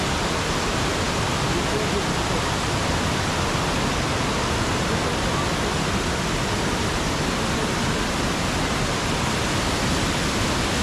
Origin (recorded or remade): recorded